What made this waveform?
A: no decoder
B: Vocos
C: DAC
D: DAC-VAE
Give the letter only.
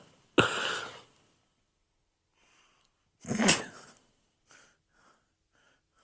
A